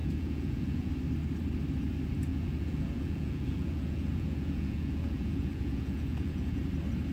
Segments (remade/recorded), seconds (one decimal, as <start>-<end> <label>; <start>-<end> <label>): 0.0-0.9 remade; 0.9-2.3 recorded; 2.3-6.6 remade; 6.6-7.1 recorded